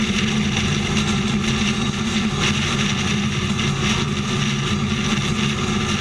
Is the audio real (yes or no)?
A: yes